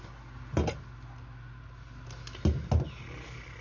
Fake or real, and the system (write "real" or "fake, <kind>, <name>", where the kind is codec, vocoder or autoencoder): real